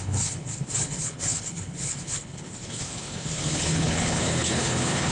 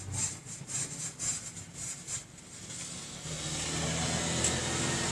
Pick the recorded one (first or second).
second